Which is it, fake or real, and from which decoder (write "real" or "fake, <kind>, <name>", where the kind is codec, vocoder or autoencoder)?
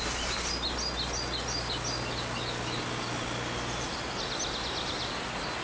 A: real